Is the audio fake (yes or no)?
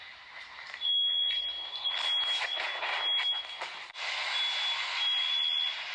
no